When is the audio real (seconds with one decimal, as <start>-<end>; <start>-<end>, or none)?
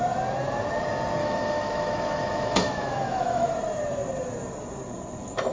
0.0-1.2; 3.5-5.5